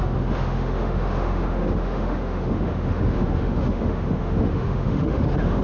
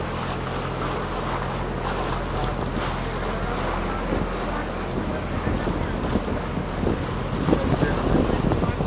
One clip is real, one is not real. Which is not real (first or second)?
first